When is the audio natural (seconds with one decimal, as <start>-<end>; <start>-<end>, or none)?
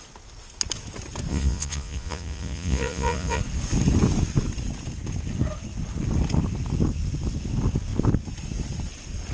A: 0.0-1.3; 3.4-9.3